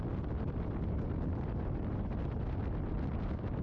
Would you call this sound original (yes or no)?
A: yes